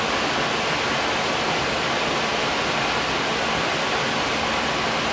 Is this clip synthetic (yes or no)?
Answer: no